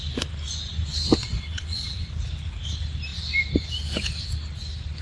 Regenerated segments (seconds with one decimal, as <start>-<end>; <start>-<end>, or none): 1.2-2.1